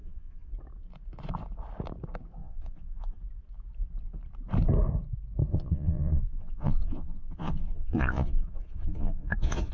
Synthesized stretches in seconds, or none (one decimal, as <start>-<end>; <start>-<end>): 0.0-0.5; 2.4-3.2; 5.5-9.7